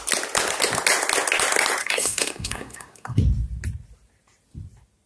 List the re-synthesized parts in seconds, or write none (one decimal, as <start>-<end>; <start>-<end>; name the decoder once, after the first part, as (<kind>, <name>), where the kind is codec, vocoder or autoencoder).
1.8-3.2 (codec, SNAC)